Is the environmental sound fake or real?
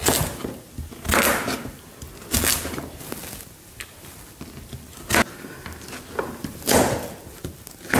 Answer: real